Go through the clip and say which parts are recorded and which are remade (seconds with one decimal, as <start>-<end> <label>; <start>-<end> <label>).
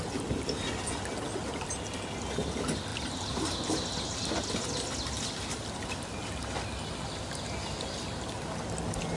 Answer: 0.0-2.9 recorded; 2.9-3.8 remade; 3.8-9.2 recorded